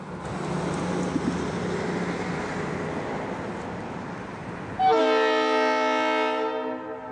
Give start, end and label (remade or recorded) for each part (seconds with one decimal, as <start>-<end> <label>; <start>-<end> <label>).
0.0-7.1 recorded